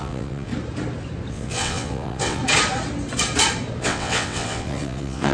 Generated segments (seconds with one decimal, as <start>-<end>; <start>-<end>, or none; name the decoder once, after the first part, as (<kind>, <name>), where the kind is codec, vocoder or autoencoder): 0.0-0.5 (vocoder, WaveNeXt); 1.3-2.4; 3.8-5.3